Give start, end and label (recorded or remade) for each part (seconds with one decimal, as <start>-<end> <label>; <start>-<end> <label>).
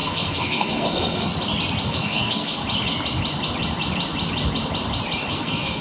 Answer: 0.0-1.3 remade; 1.3-1.9 recorded; 1.9-2.6 remade; 2.6-5.3 recorded; 5.3-5.8 remade